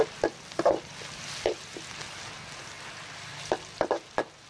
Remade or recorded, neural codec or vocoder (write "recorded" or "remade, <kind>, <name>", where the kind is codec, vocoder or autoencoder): recorded